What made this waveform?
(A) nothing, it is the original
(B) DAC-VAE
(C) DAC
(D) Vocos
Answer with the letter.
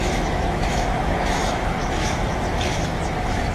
B